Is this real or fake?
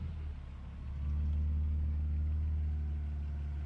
real